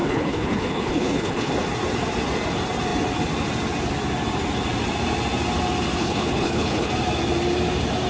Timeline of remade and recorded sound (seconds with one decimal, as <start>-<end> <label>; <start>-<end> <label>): 0.0-1.5 remade; 1.5-6.0 recorded; 6.0-6.9 remade; 6.9-8.1 recorded